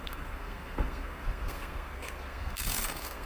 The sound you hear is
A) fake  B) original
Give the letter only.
A